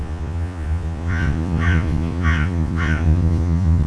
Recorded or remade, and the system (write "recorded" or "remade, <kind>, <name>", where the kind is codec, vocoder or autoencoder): remade, vocoder, Vocos